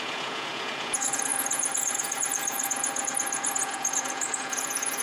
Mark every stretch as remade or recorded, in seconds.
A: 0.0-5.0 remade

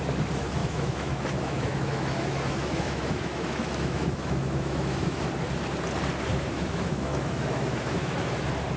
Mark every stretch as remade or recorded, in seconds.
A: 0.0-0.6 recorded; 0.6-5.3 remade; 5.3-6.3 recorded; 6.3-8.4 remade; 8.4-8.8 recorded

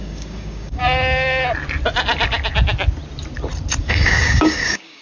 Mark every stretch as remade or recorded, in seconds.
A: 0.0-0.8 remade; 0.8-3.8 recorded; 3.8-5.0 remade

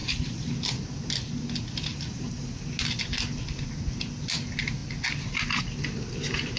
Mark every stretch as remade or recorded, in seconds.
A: 0.0-0.5 remade; 0.5-1.9 recorded; 1.9-2.7 remade; 2.7-6.6 recorded

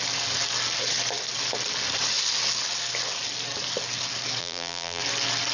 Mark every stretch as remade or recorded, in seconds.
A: 0.0-4.4 recorded; 4.4-5.0 remade; 5.0-5.5 recorded

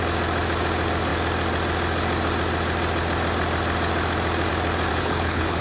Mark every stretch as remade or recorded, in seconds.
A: 0.0-4.9 recorded; 4.9-5.6 remade